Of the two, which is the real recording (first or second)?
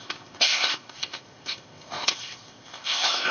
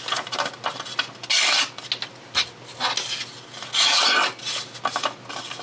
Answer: second